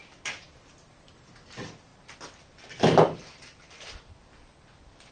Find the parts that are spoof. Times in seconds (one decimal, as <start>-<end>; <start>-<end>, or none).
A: none